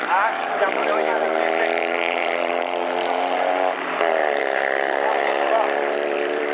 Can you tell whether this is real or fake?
fake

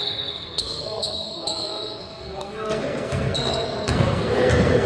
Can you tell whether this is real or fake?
fake